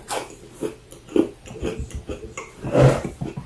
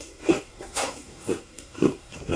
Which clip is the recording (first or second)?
first